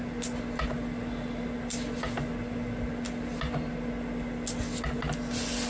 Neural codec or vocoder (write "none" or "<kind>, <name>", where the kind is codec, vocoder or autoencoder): none